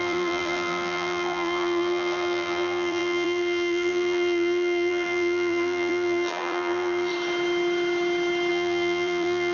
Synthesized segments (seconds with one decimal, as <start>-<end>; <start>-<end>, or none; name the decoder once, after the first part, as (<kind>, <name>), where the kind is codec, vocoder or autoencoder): 0.0-7.1 (vocoder, BigVGAN v2); 8.5-9.5

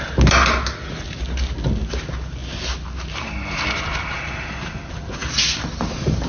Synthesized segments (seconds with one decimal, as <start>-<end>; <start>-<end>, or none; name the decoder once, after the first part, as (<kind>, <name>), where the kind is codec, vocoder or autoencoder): none

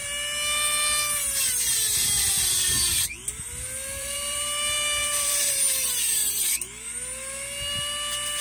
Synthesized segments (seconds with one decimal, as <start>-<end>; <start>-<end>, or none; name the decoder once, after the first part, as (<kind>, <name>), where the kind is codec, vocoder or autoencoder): 4.0-6.2 (vocoder, BigVGAN v2)

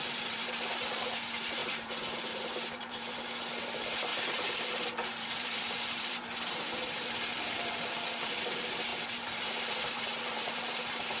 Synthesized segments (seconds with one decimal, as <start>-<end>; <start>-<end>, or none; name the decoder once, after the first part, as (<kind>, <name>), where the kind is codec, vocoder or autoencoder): 0.0-11.2 (vocoder, BigVGAN v2)